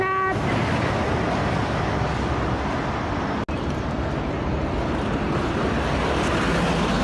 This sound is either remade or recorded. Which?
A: recorded